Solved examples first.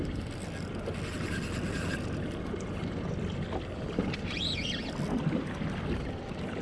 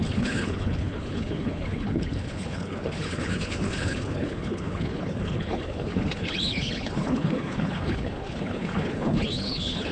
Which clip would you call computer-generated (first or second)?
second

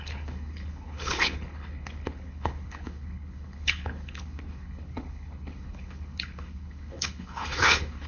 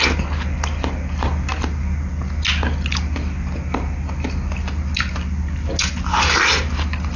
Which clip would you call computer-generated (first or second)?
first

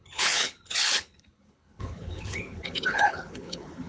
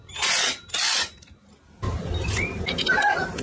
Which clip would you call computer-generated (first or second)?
first